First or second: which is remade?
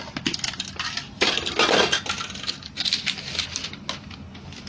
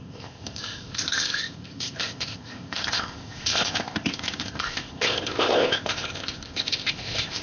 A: second